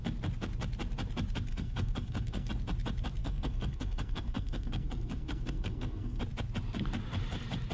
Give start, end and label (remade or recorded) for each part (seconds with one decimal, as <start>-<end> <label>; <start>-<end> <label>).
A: 0.0-1.5 recorded; 1.5-2.5 remade; 2.5-3.2 recorded; 3.2-6.2 remade; 6.2-7.7 recorded